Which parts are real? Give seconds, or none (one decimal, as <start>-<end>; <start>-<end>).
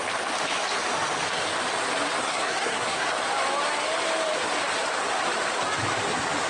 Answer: 0.0-2.2; 3.1-6.5